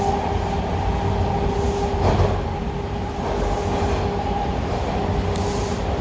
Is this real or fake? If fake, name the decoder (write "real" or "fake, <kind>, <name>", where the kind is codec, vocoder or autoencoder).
real